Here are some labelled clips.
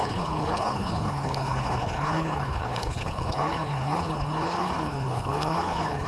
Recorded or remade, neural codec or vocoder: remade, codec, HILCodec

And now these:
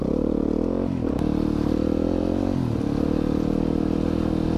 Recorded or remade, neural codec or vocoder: recorded